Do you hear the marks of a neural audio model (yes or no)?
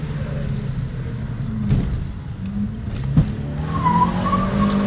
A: no